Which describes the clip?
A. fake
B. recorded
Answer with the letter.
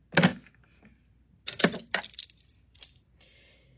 B